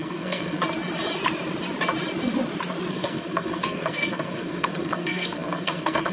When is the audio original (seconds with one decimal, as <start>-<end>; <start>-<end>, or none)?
0.6-2.9